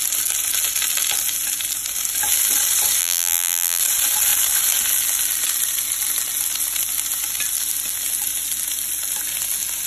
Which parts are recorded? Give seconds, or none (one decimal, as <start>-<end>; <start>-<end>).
0.0-3.0; 3.8-9.9